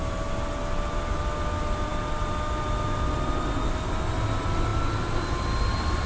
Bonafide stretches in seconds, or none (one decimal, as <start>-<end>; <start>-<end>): 0.0-6.1